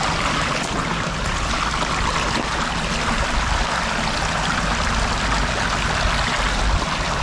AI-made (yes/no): no